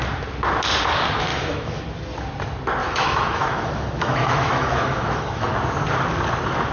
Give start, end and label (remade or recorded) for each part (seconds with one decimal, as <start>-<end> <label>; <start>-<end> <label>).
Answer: 0.0-1.3 recorded; 1.3-1.8 remade; 1.8-2.8 recorded; 2.8-5.5 remade; 5.5-6.7 recorded